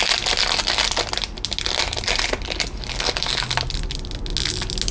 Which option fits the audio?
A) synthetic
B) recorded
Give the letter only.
B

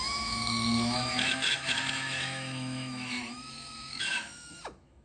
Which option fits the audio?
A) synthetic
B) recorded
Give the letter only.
A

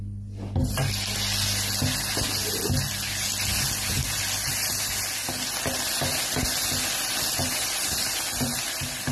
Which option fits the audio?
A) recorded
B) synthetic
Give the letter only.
A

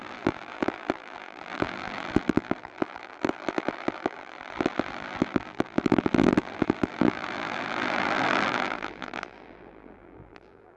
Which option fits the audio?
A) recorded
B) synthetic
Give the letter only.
B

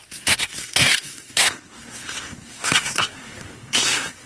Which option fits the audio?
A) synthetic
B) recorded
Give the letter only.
A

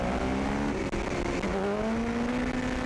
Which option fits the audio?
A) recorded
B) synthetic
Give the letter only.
A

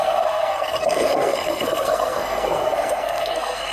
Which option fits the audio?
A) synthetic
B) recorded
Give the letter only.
A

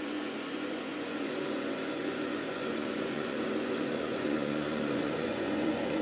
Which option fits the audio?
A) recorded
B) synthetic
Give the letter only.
B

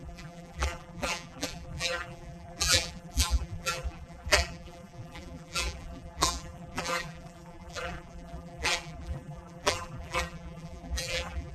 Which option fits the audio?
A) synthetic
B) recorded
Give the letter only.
A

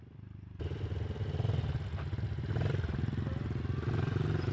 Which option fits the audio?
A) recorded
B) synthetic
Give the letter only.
A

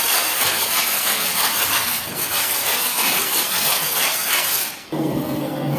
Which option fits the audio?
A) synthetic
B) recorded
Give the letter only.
A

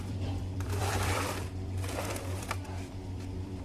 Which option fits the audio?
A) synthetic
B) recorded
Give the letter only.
A